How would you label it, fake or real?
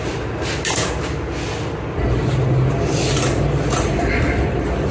real